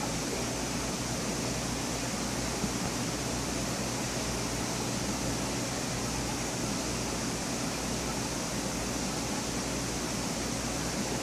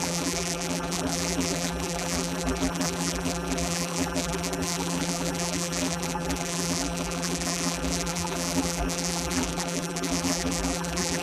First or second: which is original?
first